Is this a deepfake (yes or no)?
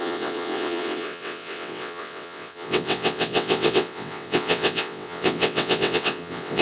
yes